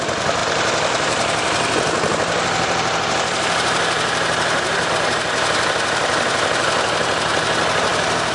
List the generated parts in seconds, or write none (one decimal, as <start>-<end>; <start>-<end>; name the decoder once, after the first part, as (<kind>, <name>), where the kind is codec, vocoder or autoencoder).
0.0-7.3 (vocoder, BigVGAN v2); 7.8-8.3